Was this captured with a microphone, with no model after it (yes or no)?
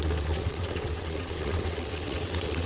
no